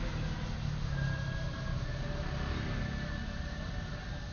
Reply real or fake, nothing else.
real